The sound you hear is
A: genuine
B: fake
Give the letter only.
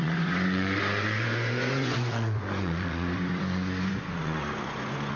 B